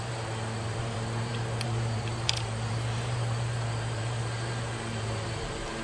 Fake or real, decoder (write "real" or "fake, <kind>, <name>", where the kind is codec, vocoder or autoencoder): fake, vocoder, BigVGAN v2